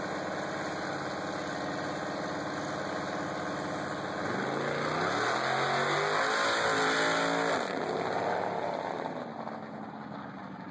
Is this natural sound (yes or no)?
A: yes